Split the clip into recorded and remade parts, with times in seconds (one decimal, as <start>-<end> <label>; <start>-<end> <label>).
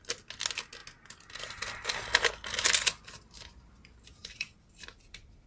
0.0-4.2 recorded; 4.2-5.5 remade